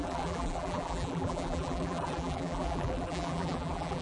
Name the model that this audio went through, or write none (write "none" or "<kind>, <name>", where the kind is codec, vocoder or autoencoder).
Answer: vocoder, BigVGAN v2